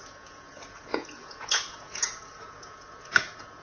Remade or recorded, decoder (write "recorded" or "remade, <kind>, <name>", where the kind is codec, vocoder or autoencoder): remade, vocoder, Vocos